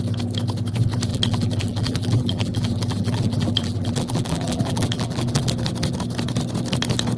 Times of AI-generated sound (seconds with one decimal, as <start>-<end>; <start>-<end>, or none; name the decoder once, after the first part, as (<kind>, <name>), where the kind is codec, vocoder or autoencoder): 1.1-5.4 (vocoder, BigVGAN v2)